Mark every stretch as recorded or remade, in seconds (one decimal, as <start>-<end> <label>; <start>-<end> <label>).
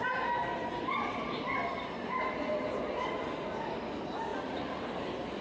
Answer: 0.0-4.3 recorded; 4.3-4.8 remade; 4.8-5.4 recorded